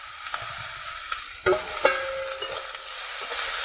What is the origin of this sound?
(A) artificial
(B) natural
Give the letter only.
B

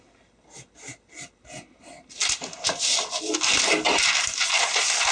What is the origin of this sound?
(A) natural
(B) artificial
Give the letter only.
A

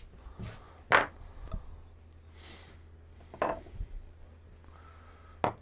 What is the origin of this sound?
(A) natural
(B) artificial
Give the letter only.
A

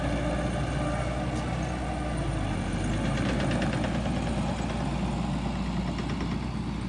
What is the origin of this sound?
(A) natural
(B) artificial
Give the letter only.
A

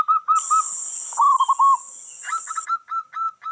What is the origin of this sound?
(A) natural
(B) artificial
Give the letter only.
A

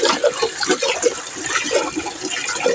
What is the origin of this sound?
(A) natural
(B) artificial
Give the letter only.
A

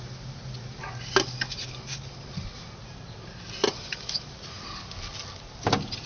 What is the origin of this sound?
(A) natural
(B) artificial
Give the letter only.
A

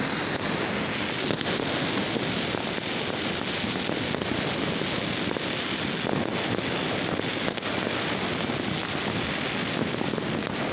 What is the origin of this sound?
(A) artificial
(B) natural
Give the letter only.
B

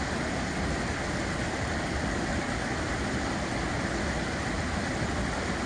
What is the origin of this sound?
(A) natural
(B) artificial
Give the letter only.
A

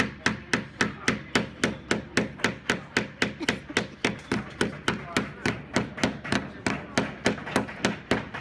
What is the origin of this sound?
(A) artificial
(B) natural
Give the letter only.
B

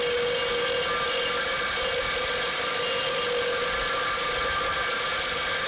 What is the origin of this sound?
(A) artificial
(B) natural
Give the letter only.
B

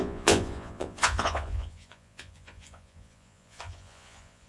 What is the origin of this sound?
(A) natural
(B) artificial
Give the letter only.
B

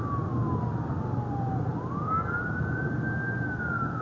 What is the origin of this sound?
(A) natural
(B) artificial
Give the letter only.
A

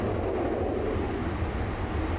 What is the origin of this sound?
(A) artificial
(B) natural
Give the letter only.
B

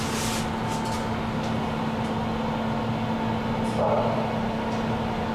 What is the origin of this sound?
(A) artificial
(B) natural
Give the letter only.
B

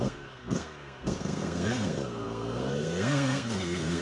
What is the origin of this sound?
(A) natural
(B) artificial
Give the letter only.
B